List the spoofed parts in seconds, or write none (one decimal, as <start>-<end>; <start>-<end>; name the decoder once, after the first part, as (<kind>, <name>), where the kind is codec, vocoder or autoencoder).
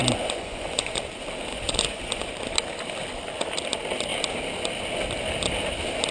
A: 0.0-1.0 (vocoder, Vocos); 1.5-2.3